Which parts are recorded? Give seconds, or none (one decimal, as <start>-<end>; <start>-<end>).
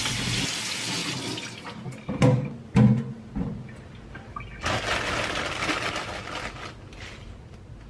0.0-7.9